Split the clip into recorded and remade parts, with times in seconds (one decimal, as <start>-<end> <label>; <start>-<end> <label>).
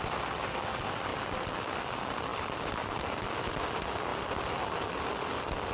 0.0-5.7 recorded